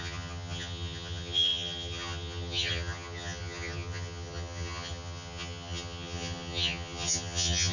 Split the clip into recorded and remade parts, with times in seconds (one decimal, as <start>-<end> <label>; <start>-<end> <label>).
0.0-7.7 remade